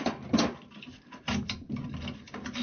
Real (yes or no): yes